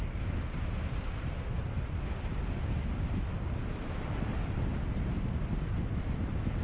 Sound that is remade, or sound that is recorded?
recorded